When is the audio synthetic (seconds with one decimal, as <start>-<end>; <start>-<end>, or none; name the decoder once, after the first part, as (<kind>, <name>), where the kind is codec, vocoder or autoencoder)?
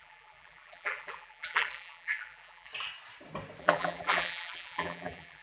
0.0-2.7 (vocoder, BigVGAN v2); 3.6-5.4